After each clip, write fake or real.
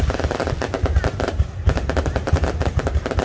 real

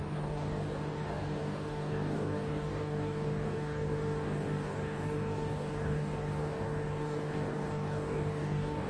fake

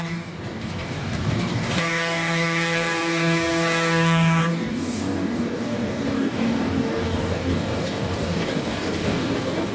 fake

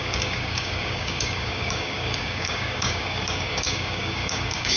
fake